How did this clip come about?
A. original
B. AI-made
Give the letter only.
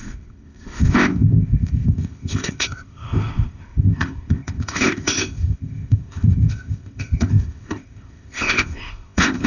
B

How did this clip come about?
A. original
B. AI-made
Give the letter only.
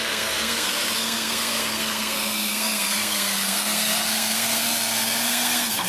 B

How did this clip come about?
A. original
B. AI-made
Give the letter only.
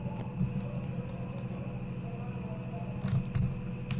A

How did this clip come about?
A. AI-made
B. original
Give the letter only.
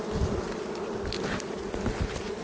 B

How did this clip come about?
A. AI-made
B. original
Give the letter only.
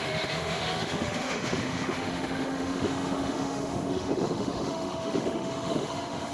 A